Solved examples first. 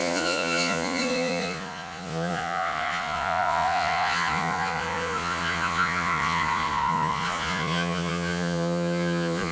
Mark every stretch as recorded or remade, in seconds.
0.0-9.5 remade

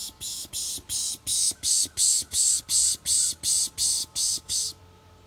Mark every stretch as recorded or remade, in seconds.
0.0-0.5 remade; 0.5-1.3 recorded; 1.3-2.6 remade; 2.6-4.0 recorded; 4.0-4.8 remade; 4.8-5.3 recorded

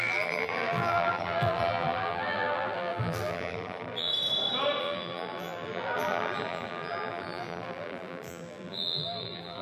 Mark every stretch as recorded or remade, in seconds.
0.0-4.1 remade; 4.1-4.8 recorded; 4.8-9.6 remade